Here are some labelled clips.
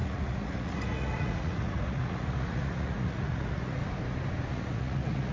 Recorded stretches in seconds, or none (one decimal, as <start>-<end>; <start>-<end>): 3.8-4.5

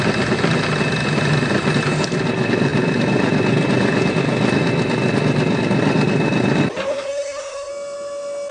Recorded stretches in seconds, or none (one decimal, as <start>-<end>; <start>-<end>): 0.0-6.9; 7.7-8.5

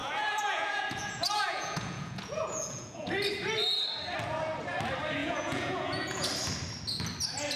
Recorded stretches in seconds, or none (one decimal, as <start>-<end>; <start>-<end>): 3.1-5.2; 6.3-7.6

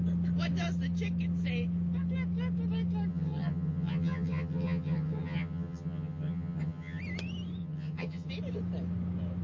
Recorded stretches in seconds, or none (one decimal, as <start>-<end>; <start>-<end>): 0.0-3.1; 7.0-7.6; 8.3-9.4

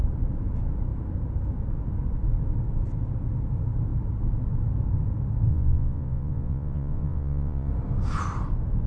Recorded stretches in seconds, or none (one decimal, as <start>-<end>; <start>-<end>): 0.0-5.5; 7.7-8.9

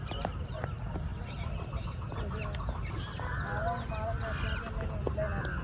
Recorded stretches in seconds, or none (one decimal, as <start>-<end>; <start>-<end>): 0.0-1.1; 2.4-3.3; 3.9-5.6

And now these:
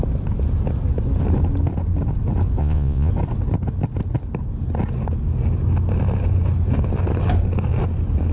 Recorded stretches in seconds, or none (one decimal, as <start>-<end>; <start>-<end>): 0.0-2.6; 3.1-8.3